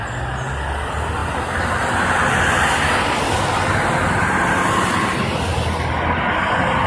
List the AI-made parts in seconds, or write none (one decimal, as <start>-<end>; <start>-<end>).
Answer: none